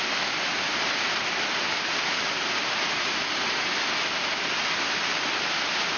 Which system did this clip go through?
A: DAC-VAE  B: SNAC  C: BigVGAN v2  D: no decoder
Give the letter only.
D